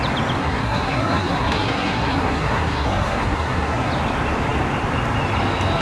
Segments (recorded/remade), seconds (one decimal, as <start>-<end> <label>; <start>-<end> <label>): 0.0-0.4 recorded; 0.4-3.9 remade; 3.9-5.8 recorded